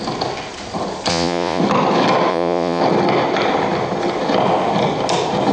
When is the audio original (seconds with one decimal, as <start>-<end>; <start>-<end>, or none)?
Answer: 0.0-1.1; 1.6-2.3; 2.8-5.5